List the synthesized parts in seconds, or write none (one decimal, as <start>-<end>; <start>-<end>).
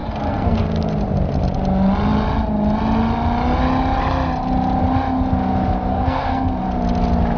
0.0-0.6; 5.9-6.6